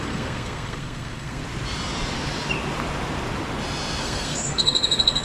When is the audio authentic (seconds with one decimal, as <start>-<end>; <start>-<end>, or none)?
1.4-4.0